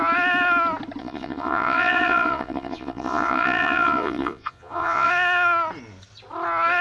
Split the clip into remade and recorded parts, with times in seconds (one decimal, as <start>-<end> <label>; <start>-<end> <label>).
0.0-1.0 recorded; 1.0-5.1 remade; 5.1-6.8 recorded